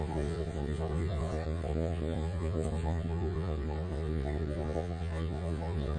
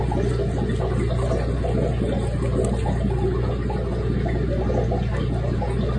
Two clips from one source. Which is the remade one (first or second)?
first